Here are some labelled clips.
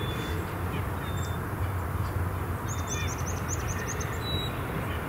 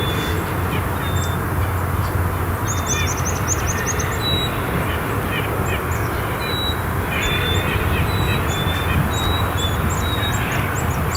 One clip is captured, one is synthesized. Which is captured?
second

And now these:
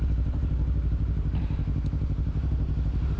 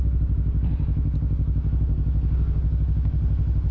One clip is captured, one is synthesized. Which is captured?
second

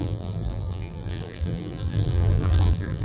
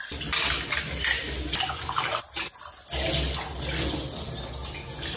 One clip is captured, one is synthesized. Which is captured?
second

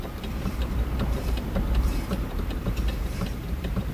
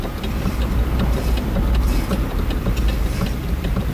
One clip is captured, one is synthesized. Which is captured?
second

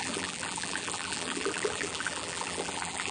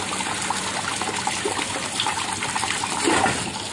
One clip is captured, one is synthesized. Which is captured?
second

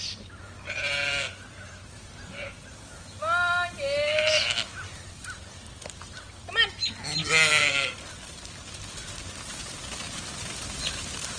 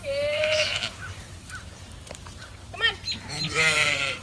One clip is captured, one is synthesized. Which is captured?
first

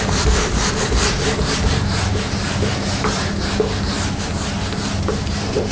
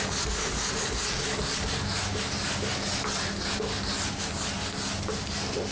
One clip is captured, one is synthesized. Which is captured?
second